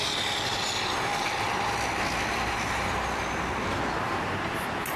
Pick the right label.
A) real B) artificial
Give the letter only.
A